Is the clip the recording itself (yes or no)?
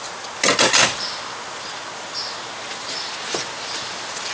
yes